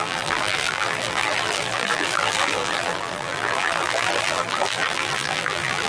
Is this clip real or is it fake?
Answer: fake